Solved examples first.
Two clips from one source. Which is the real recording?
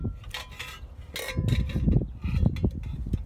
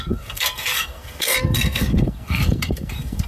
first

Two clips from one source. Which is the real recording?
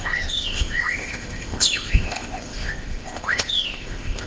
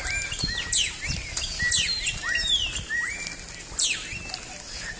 second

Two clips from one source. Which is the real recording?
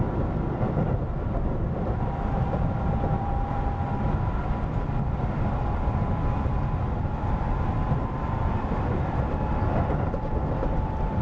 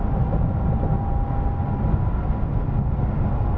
second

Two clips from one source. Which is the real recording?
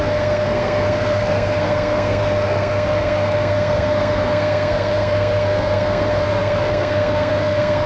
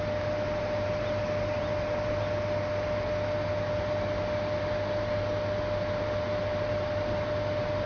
second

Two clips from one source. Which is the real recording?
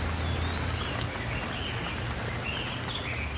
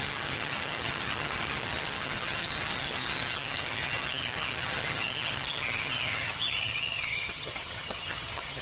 first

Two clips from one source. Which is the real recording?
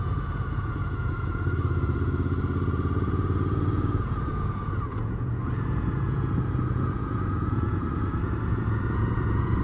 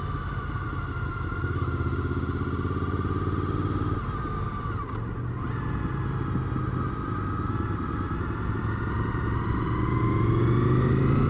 second